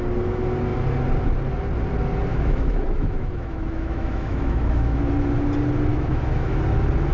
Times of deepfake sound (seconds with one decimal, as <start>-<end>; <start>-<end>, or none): 2.3-5.0; 5.9-6.6